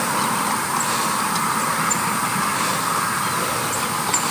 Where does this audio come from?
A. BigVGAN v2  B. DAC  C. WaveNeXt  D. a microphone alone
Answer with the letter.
D